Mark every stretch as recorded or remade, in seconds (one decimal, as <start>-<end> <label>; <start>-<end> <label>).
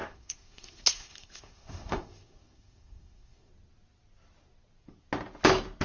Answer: 0.0-3.5 remade; 3.5-5.8 recorded